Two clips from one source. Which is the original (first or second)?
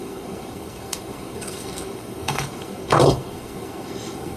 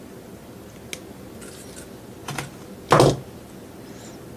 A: second